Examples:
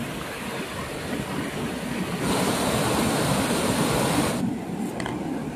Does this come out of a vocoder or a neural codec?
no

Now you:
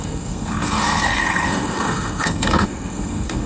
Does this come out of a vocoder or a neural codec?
yes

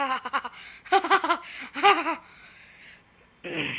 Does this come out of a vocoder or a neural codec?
no